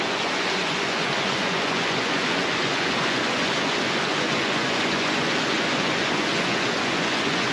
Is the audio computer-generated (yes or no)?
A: yes